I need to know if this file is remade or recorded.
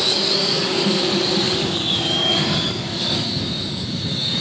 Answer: remade